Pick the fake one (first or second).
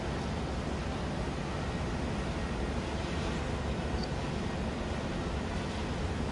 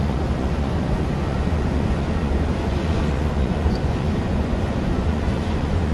second